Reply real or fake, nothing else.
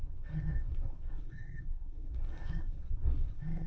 fake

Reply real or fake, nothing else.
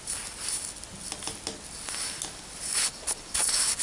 real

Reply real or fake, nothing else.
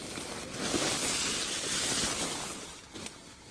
real